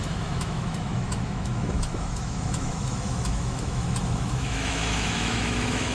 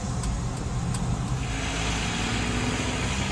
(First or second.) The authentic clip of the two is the second